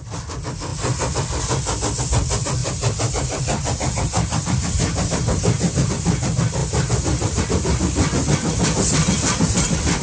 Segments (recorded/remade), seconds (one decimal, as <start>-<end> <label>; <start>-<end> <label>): 0.0-2.6 recorded; 2.6-5.9 remade; 5.9-6.6 recorded; 6.6-7.4 remade; 7.4-10.0 recorded